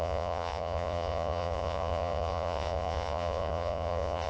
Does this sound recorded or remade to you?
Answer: remade